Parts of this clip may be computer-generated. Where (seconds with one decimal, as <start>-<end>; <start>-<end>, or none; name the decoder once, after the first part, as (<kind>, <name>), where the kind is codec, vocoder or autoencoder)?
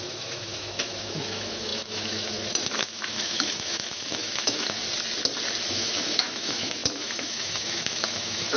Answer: 0.0-4.8 (autoencoder, DAC-VAE); 5.7-8.6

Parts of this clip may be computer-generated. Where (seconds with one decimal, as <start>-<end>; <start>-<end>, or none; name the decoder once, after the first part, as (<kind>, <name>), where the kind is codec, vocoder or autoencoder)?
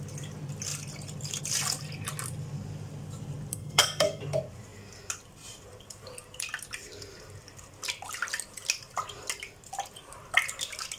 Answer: 3.5-4.2 (codec, SNAC)